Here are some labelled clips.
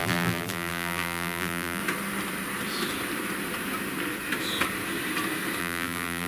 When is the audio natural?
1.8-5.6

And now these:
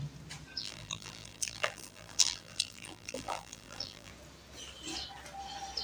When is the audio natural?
0.0-0.6; 4.1-5.8

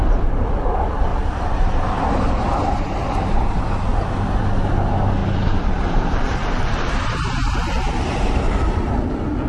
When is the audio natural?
0.0-1.1; 3.4-5.2; 8.9-9.5

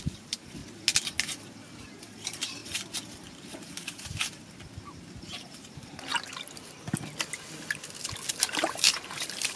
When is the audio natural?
0.6-2.0; 2.6-3.3; 6.1-8.3